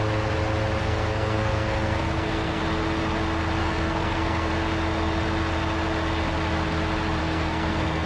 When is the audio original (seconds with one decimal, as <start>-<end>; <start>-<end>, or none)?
0.0-0.8; 2.6-3.6; 4.5-7.2